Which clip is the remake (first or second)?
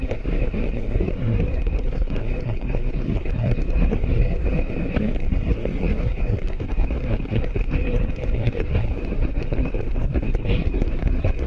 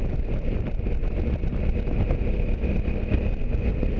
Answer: first